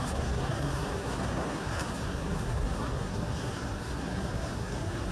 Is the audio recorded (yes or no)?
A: no